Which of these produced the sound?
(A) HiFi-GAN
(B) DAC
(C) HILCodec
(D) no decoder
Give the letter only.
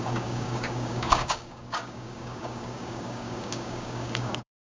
B